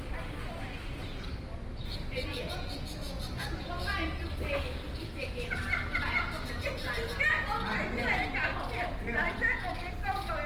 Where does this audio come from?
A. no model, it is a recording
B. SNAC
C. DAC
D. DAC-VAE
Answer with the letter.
A